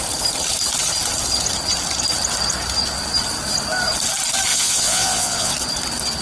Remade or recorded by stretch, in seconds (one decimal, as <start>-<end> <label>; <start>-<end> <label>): 0.0-4.5 recorded; 4.5-5.5 remade; 5.5-6.2 recorded